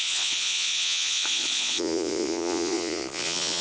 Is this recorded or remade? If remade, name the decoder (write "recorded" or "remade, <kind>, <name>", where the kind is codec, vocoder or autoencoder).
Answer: remade, vocoder, Vocos